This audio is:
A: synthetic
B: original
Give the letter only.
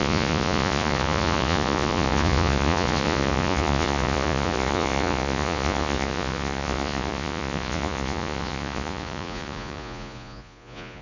A